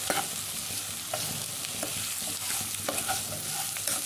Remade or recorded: recorded